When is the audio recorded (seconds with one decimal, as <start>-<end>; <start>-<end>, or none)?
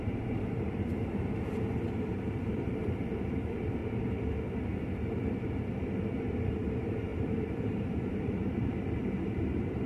3.8-6.3